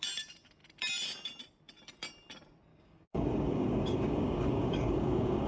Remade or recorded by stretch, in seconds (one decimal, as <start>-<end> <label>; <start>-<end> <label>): 0.0-2.7 recorded; 2.7-5.5 remade